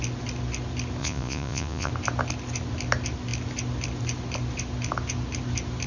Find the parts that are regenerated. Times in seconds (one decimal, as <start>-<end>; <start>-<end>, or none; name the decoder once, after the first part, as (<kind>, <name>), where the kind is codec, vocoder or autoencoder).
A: 1.0-1.9 (vocoder, Vocos)

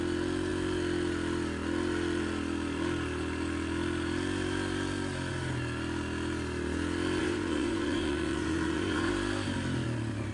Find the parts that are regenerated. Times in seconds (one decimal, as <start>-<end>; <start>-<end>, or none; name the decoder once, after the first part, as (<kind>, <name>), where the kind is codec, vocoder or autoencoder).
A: 7.2-9.1 (vocoder, Vocos)

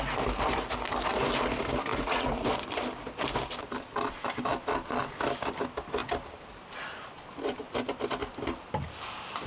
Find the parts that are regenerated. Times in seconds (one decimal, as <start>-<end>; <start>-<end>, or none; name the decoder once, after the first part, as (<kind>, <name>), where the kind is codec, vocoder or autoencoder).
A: 1.9-2.5 (vocoder, Vocos)

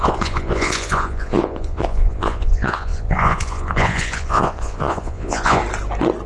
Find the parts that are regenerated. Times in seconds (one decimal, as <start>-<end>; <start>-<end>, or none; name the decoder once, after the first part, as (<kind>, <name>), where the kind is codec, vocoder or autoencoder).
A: 0.0-5.6 (vocoder, Vocos)

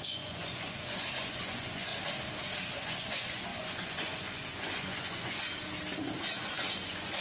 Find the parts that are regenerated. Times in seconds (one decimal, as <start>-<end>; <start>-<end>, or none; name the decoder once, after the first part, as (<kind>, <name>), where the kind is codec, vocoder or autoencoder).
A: 0.0-1.9 (vocoder, Vocos); 2.8-5.6; 6.2-7.2

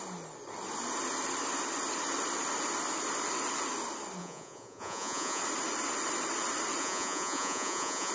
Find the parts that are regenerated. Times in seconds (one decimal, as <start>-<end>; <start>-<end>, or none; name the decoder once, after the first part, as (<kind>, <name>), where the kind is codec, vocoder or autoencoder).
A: 4.2-5.4 (vocoder, Vocos); 6.8-8.1

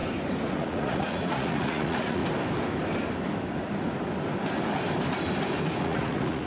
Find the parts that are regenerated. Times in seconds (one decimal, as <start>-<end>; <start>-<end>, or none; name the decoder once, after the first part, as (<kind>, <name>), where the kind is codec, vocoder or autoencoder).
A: 0.5-2.2 (vocoder, Vocos); 5.8-6.5